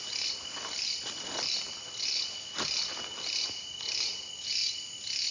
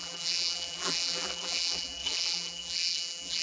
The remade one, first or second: second